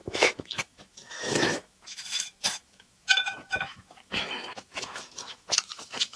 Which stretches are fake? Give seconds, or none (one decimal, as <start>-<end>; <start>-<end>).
0.0-6.2